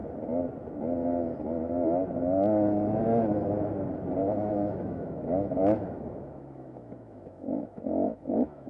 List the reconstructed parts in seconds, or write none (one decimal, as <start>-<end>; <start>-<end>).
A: 4.2-8.7